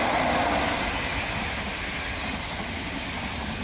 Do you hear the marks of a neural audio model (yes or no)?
no